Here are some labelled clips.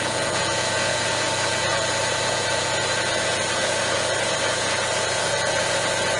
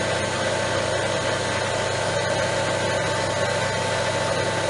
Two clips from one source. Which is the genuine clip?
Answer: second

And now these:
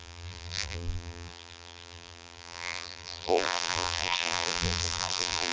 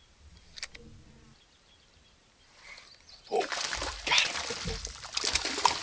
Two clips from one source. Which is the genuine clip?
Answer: second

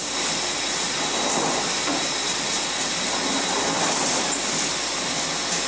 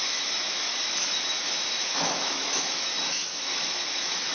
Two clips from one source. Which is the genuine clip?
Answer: first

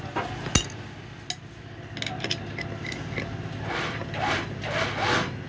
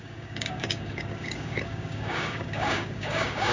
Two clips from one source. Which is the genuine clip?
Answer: first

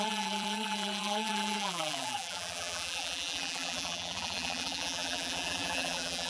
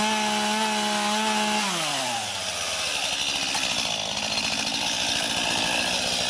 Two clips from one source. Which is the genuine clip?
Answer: second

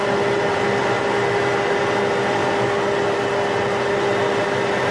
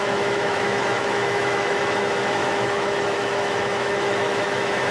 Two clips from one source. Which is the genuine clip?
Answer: first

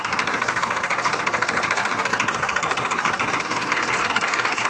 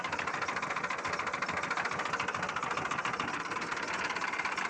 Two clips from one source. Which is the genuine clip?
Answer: second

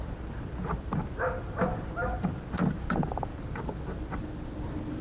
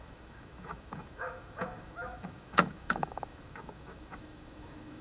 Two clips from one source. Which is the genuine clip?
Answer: first